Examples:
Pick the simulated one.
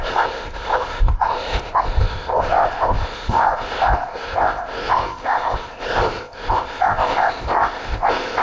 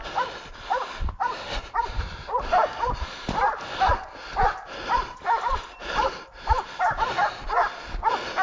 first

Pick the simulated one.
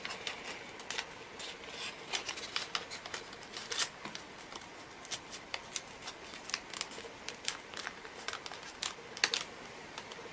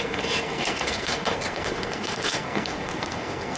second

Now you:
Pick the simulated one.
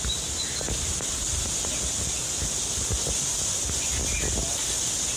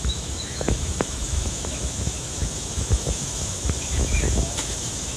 second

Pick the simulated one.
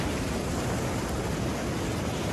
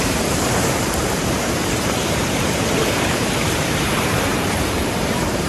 second